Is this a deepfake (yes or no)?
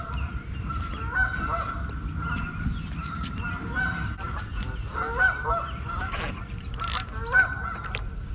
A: no